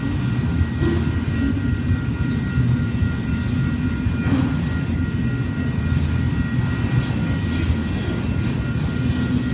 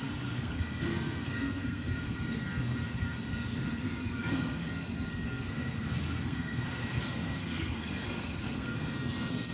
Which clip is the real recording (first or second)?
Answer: first